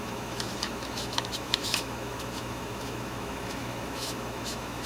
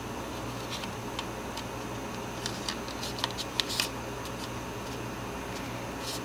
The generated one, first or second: first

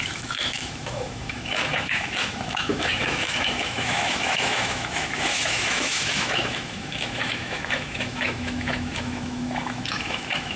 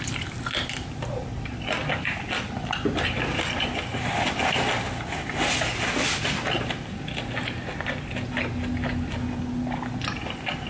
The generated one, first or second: first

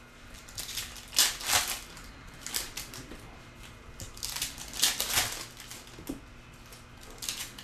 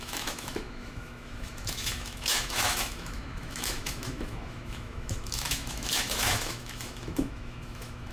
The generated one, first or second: second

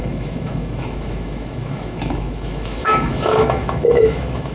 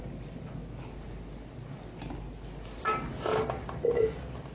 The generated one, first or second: first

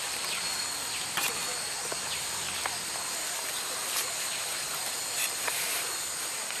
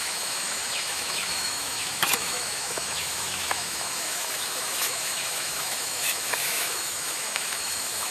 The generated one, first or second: second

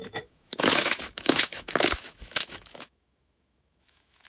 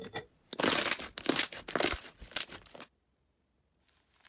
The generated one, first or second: first